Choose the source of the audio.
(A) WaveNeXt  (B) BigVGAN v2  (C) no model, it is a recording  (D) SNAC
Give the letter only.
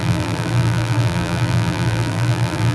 B